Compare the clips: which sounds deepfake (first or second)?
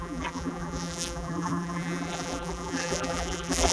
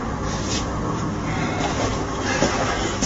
first